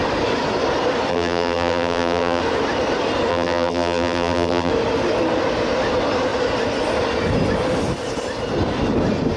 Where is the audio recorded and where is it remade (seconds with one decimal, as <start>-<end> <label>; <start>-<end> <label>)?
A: 0.0-1.1 recorded; 1.1-2.4 remade; 2.4-3.3 recorded; 3.3-4.7 remade; 4.7-9.4 recorded